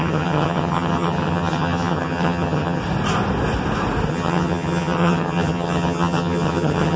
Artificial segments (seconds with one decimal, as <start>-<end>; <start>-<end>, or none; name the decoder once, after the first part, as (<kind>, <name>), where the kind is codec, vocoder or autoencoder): 0.0-2.8 (vocoder, HiFi-GAN); 4.1-7.0